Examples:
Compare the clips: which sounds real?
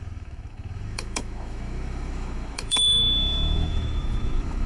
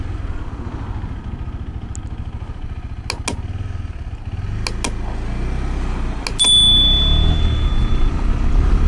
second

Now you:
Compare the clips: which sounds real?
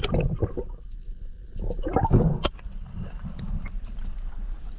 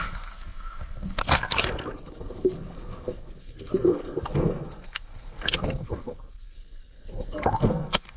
first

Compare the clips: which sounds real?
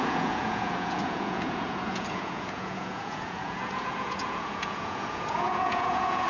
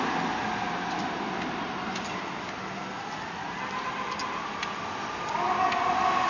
second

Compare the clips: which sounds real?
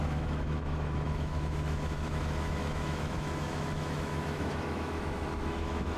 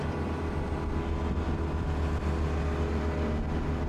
second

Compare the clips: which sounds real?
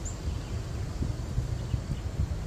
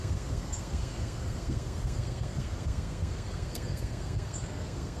first